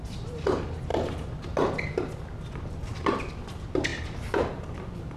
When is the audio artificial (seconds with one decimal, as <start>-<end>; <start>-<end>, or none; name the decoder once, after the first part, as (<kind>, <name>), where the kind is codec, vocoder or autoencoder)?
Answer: none